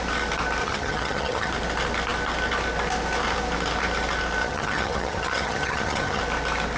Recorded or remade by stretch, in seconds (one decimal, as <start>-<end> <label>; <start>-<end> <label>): 0.0-0.6 recorded; 0.6-1.5 remade; 1.5-4.4 recorded; 4.4-6.2 remade; 6.2-6.8 recorded